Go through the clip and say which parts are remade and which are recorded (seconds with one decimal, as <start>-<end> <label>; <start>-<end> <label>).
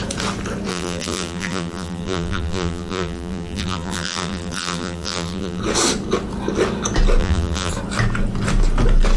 0.0-0.7 recorded; 0.7-5.6 remade; 5.6-7.2 recorded; 7.2-7.7 remade; 7.7-9.2 recorded